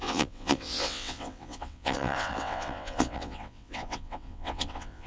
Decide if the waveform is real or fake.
fake